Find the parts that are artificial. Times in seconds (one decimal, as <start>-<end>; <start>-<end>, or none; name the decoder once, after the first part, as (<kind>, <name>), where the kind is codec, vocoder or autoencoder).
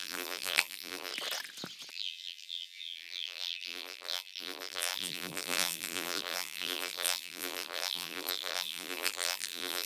0.0-1.1 (vocoder, BigVGAN v2); 1.9-9.9